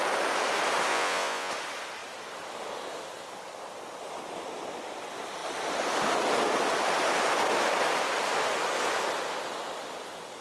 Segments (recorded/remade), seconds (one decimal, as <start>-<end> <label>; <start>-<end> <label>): 0.0-0.9 recorded; 0.9-1.5 remade; 1.5-10.4 recorded